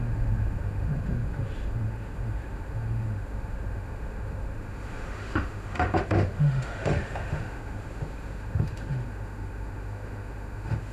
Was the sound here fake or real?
fake